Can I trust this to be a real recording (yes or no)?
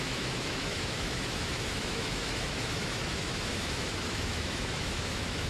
no